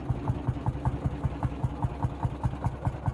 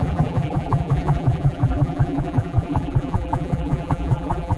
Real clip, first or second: first